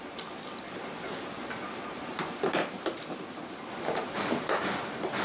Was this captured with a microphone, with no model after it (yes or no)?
yes